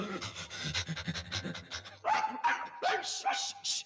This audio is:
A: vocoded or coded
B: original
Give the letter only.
B